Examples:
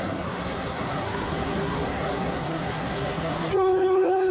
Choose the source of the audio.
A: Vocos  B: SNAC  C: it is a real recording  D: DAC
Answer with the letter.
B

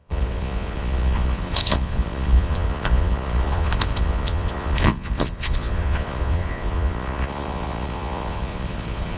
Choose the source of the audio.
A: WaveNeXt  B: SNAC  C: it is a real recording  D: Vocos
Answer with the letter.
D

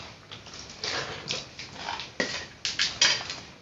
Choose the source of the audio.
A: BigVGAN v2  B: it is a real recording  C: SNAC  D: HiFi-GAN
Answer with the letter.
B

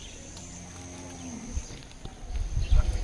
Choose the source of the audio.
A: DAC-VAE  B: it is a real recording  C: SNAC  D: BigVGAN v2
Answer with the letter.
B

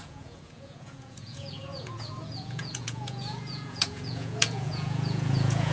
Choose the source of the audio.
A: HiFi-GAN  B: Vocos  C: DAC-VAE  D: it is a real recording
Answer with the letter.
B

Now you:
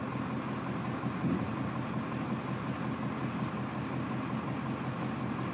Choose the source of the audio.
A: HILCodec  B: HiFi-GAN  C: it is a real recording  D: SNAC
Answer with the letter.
C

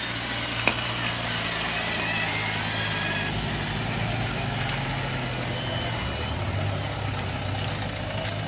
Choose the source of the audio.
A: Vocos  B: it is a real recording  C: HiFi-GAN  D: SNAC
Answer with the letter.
B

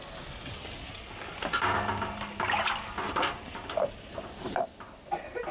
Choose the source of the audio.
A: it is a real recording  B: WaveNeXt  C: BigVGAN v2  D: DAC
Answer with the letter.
A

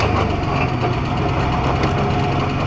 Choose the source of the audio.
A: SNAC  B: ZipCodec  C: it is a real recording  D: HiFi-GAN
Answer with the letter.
C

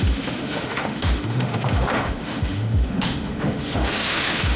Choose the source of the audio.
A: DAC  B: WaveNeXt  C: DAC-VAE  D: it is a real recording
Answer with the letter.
C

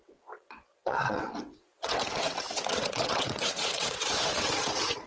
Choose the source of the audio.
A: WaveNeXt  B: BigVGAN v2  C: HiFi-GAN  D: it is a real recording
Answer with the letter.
A